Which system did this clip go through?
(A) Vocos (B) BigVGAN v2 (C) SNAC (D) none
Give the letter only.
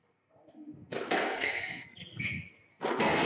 C